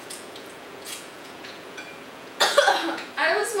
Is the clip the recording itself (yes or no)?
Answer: no